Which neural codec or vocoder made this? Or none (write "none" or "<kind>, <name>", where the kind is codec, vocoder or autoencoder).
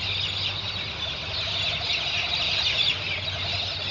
none